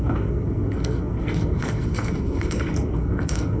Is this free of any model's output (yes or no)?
no